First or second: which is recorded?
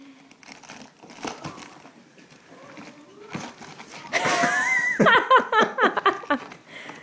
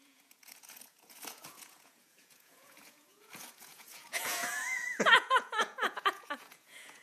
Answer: first